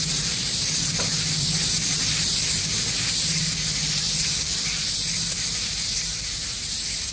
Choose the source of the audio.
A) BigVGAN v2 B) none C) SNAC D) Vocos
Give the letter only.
A